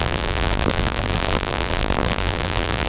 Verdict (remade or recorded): remade